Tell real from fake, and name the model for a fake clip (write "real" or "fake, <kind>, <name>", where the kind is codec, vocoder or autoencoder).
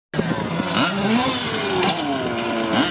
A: real